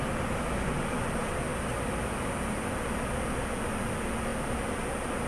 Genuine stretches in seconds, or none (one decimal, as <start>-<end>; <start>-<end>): 0.0-5.3